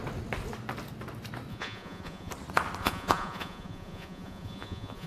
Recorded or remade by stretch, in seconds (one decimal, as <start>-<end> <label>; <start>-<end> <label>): 0.0-1.5 recorded; 1.5-2.3 remade; 2.3-2.8 recorded; 2.8-5.1 remade